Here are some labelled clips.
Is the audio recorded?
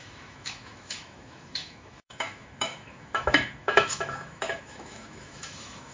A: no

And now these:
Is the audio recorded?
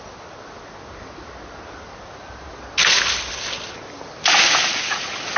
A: yes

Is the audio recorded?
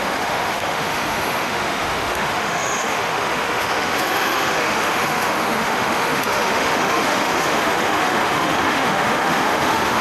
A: no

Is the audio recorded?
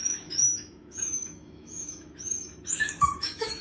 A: no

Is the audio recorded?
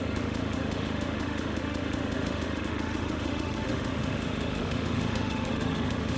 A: no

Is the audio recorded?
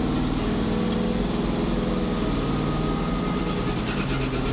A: yes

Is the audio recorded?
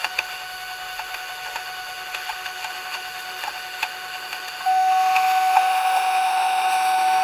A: no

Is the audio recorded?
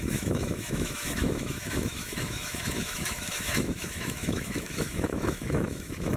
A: no